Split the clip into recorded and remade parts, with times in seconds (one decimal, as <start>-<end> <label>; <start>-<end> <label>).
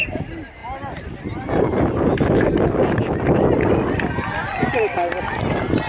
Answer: 0.0-5.9 recorded